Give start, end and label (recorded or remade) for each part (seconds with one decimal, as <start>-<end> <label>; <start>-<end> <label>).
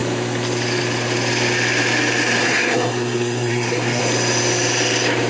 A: 0.0-2.4 recorded; 2.4-4.0 remade; 4.0-5.3 recorded